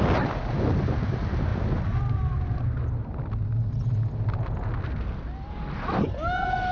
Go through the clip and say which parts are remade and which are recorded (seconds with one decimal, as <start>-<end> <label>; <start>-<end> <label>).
0.0-6.7 recorded